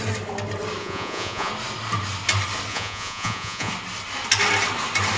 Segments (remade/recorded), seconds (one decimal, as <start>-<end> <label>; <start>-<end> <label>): 0.0-0.8 recorded; 0.8-1.5 remade; 1.5-2.7 recorded; 2.7-3.7 remade; 3.7-5.2 recorded